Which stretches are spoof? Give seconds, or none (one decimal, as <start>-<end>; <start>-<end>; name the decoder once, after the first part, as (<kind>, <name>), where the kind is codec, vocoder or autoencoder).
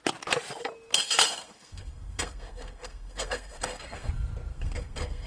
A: 0.9-4.1 (codec, SNAC); 4.5-5.3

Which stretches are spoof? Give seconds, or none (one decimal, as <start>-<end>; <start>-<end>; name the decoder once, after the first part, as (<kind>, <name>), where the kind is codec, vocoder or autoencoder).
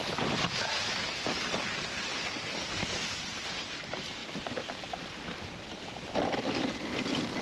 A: 0.0-2.1 (vocoder, BigVGAN v2); 2.7-7.4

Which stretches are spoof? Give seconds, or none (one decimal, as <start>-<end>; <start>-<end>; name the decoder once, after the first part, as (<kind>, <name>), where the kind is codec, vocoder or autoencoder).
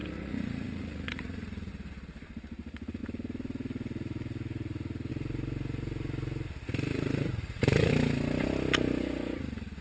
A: 0.0-1.7 (vocoder, Vocos); 6.9-7.9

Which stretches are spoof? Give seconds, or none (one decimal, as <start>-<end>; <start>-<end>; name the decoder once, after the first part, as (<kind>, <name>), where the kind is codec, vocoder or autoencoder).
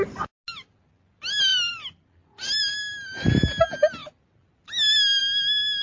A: none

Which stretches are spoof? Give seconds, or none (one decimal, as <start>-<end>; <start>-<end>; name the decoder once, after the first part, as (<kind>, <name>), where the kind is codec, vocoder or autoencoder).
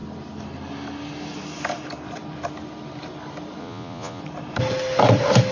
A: 3.6-4.2 (vocoder, Vocos)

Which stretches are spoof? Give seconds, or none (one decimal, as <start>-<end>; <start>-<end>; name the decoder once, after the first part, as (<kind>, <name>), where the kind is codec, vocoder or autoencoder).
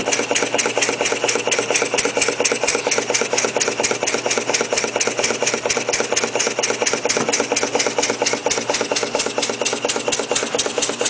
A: none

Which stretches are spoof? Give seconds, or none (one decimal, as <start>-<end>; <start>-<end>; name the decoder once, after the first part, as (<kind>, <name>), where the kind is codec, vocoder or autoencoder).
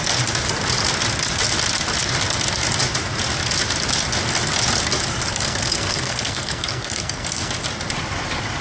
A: 5.3-7.5 (codec, SNAC)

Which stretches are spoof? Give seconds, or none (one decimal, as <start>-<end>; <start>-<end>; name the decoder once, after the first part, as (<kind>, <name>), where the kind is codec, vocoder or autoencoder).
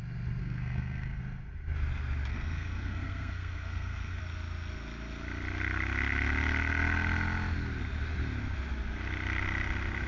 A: 0.4-1.2 (codec, SNAC); 2.3-4.2